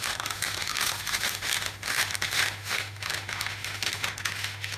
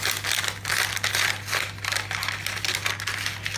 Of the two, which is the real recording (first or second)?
second